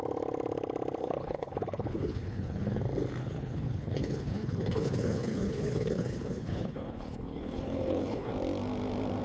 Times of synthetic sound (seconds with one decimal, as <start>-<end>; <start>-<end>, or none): 1.0-2.8; 3.2-8.3